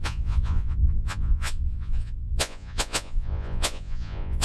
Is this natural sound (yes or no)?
no